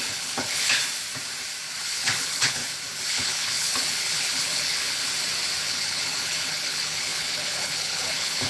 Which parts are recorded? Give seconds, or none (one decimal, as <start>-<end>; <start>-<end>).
0.8-1.8; 2.6-3.1; 5.0-5.6